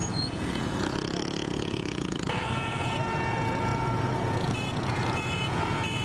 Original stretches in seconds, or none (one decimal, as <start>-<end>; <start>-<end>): none